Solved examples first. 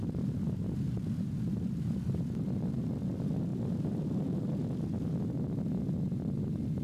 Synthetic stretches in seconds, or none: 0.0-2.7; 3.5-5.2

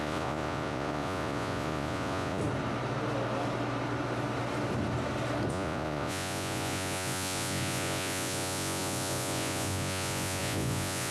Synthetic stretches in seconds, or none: 0.0-2.4; 5.5-11.1

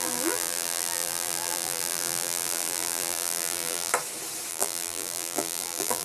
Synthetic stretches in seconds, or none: 0.0-3.9; 4.5-6.0